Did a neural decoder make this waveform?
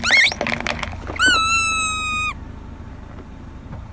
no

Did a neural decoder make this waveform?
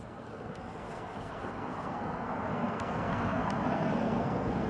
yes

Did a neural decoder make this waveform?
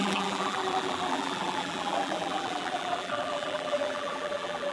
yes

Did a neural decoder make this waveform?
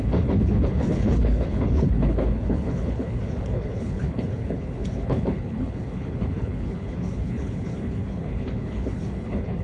yes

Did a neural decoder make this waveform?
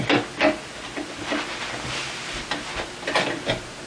no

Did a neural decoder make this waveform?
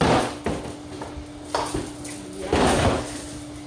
no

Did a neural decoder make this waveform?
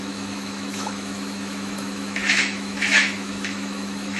yes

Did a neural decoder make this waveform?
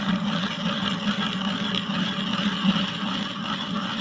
no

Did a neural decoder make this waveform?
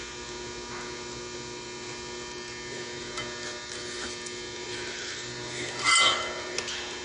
no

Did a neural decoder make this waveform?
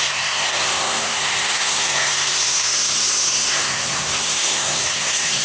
yes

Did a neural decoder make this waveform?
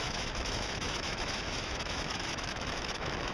yes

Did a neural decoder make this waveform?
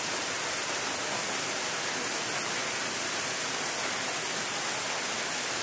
no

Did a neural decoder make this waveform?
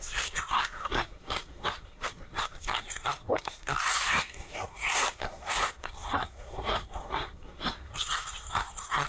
yes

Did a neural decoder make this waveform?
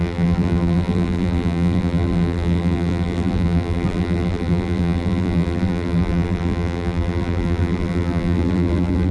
yes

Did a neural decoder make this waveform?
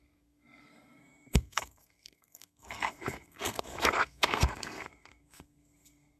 yes